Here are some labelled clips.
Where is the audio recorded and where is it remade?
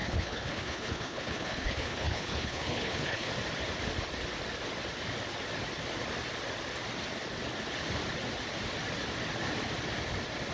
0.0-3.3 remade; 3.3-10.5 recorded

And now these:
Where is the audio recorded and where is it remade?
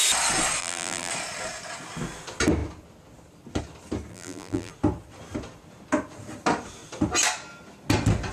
0.0-0.6 recorded; 0.6-1.1 remade; 1.1-4.1 recorded; 4.1-4.7 remade; 4.7-8.3 recorded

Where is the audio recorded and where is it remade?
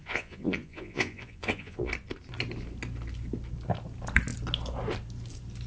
0.0-1.9 remade; 1.9-5.7 recorded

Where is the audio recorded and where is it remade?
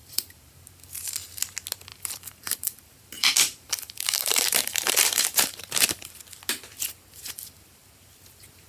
0.0-0.6 remade; 0.6-1.9 recorded; 1.9-6.2 remade; 6.2-8.7 recorded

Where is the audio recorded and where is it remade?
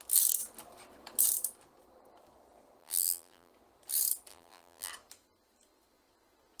0.0-2.8 recorded; 2.8-3.5 remade; 3.5-4.3 recorded; 4.3-4.9 remade; 4.9-6.6 recorded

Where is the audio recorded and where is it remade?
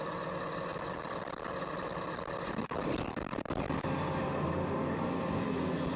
0.0-6.0 recorded